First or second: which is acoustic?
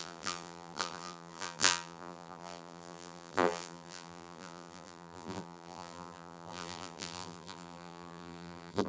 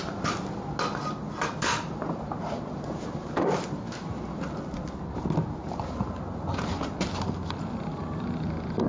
second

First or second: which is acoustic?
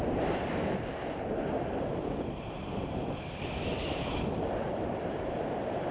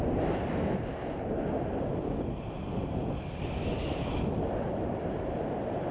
second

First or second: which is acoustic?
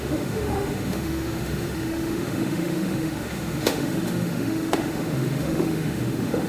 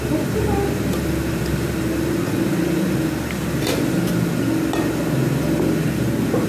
second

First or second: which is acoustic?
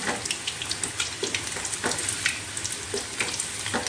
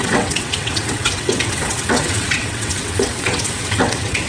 first